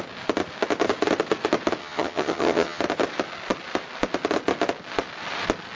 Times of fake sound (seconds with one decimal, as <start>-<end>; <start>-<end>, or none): 1.8-2.8